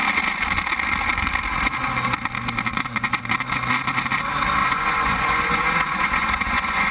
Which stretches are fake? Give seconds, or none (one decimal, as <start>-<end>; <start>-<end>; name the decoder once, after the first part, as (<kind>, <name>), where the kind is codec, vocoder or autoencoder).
2.7-3.2 (vocoder, Vocos); 4.6-6.9